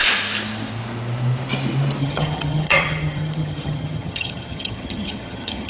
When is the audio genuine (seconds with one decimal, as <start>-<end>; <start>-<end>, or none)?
0.0-2.0